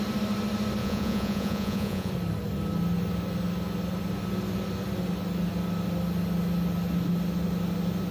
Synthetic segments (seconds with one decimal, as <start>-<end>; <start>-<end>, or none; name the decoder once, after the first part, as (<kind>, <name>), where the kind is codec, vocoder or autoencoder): 0.8-2.1 (vocoder, Vocos)